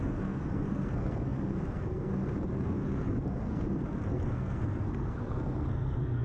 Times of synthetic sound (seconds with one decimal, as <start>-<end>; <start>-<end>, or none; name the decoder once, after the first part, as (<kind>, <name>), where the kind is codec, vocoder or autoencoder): 0.0-6.2 (codec, SNAC)